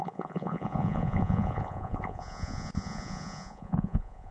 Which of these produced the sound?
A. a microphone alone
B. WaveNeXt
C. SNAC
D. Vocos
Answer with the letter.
D